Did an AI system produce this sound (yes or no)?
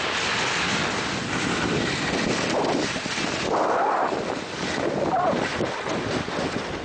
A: no